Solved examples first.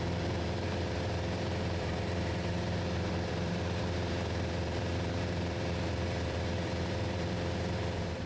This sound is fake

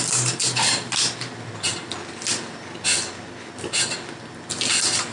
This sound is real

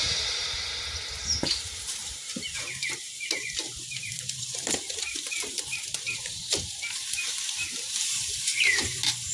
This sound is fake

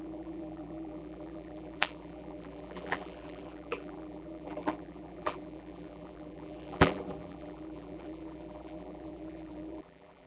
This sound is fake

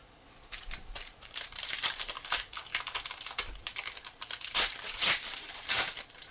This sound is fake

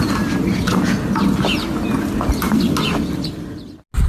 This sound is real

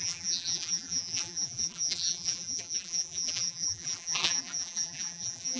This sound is fake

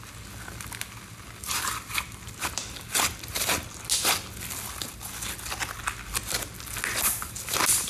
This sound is real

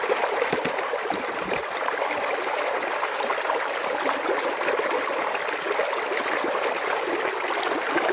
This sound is real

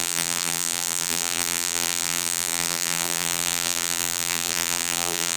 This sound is fake